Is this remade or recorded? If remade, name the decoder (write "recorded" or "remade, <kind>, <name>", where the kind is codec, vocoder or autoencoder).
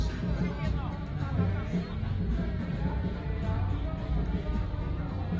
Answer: recorded